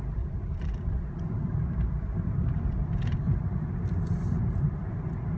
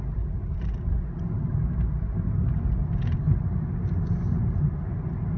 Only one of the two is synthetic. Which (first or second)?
first